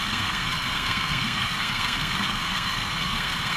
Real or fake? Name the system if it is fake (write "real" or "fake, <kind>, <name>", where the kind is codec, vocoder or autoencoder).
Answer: fake, codec, SNAC